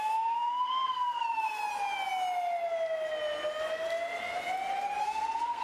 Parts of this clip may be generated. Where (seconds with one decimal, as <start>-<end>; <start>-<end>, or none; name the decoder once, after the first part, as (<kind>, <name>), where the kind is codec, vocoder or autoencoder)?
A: 0.0-1.6 (codec, SNAC); 5.0-5.6